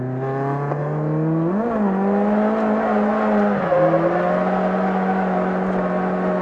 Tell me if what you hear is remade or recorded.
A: recorded